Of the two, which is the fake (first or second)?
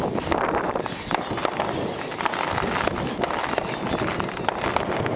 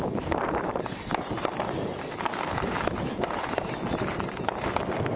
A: second